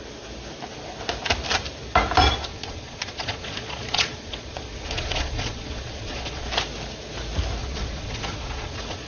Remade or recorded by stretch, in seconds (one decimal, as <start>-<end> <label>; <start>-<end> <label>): 0.0-2.5 recorded; 2.5-6.5 remade; 6.5-7.6 recorded; 7.6-9.1 remade